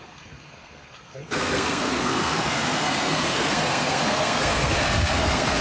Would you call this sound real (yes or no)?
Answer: no